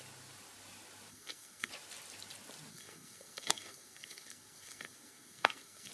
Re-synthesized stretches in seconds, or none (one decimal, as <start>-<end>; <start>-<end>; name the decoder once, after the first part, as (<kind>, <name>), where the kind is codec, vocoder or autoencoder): 1.1-1.7 (codec, SNAC); 2.7-5.9